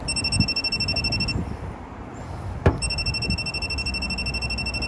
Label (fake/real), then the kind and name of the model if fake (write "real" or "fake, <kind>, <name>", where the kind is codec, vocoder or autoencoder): real